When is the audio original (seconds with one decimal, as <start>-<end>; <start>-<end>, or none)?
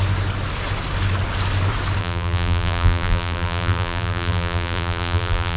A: 0.0-2.0